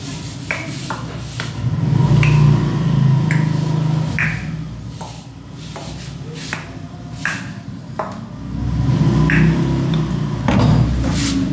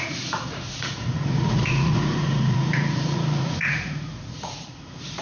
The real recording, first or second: first